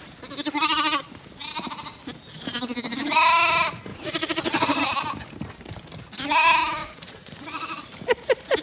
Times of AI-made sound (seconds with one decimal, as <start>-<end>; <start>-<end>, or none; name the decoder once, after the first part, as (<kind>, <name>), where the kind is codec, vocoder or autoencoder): 3.9-4.8 (vocoder, Vocos); 6.8-7.8